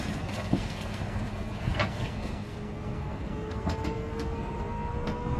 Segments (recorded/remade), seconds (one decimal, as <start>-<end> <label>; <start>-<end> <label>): 0.0-5.4 remade